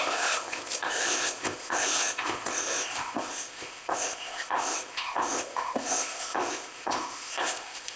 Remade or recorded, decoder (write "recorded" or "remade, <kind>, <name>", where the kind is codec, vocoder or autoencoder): remade, codec, ZipCodec